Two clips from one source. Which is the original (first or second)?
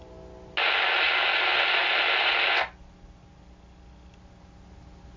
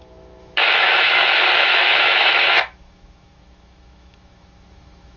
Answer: first